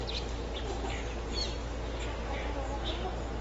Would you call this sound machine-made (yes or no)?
no